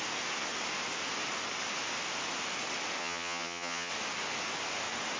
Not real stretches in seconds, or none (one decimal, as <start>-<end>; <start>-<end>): 3.0-3.9